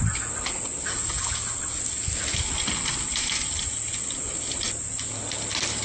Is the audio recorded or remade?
recorded